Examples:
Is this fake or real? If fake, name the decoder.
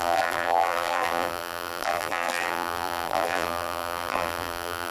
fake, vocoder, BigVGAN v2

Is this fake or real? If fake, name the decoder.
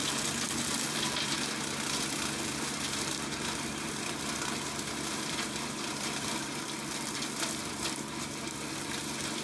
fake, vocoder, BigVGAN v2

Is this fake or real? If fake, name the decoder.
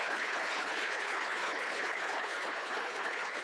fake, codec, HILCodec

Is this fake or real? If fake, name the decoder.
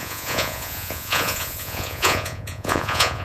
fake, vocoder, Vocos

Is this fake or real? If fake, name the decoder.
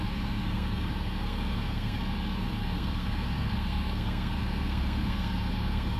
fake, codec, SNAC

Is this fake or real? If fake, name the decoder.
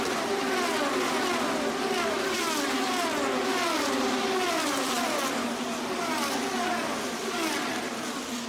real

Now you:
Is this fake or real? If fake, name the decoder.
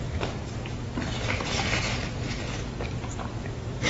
real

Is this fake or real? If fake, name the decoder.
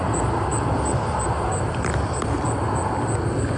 real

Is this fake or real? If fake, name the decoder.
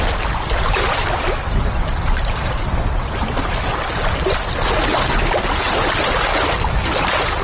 real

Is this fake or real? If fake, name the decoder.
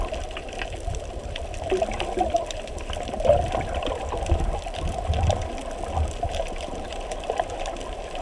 fake, vocoder, BigVGAN v2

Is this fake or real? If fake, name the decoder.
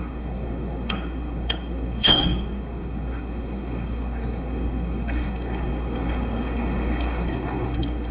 fake, codec, SNAC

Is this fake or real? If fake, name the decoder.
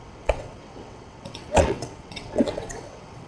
fake, vocoder, WaveNeXt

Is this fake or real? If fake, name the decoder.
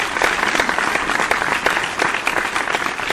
real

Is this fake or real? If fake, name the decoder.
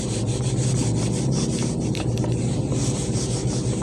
real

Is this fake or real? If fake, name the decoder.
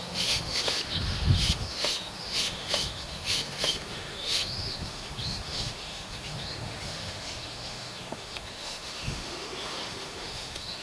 fake, autoencoder, DAC-VAE